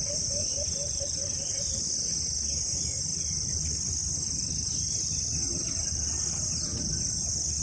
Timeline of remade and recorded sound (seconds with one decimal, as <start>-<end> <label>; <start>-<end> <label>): 0.0-0.8 recorded; 0.8-1.9 remade; 1.9-3.1 recorded; 3.1-3.6 remade; 3.6-7.6 recorded